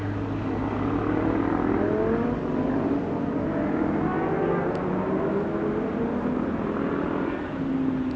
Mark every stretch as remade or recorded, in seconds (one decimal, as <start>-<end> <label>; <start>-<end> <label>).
0.0-8.2 recorded